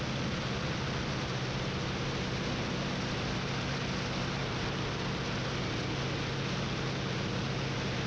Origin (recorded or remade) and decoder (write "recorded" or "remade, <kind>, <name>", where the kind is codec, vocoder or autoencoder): recorded